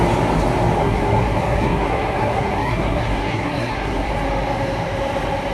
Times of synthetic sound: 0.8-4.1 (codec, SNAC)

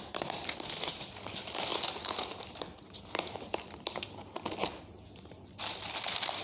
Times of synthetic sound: none

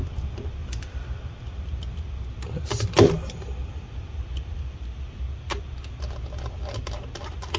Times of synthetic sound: 0.6-1.1 (vocoder, BigVGAN v2); 3.6-5.2

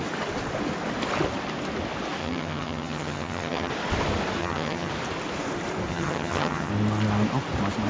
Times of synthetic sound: 2.2-3.7 (vocoder, HiFi-GAN); 4.4-4.9; 5.9-6.7

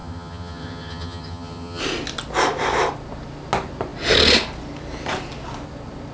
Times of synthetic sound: 0.0-1.8 (vocoder, HiFi-GAN)